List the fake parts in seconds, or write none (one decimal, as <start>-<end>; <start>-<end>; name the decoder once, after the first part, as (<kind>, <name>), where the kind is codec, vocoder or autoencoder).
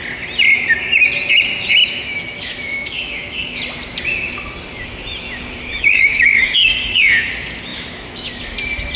1.8-3.6 (autoencoder, DAC-VAE); 5.7-7.3; 7.7-8.3